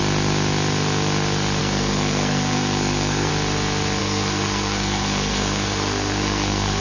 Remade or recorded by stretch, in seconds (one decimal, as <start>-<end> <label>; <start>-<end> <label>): 0.0-1.6 recorded; 1.6-3.3 remade; 3.3-4.0 recorded; 4.0-6.8 remade